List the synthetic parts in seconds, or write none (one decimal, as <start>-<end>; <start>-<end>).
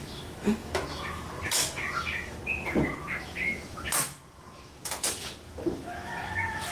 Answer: 0.0-2.4; 3.0-6.7